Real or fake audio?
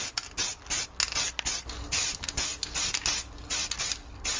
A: real